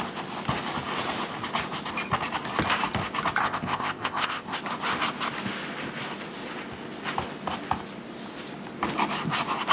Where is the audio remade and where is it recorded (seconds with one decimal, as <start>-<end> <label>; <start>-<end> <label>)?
0.0-3.4 recorded; 3.4-4.6 remade; 4.6-9.7 recorded